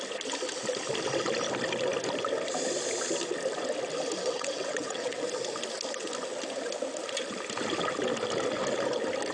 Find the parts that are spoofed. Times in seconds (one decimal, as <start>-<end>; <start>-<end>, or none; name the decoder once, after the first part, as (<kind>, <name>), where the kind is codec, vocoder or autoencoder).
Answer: 4.2-5.2 (vocoder, WaveNeXt)